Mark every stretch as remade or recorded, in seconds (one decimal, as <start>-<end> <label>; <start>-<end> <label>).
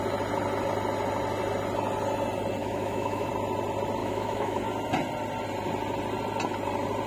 0.0-2.6 recorded; 2.6-3.3 remade; 3.3-4.0 recorded; 4.0-4.6 remade; 4.6-7.1 recorded